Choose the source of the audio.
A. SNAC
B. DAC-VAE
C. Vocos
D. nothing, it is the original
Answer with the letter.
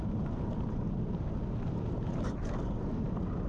D